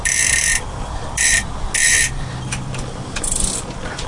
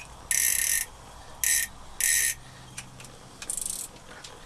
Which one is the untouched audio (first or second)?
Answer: second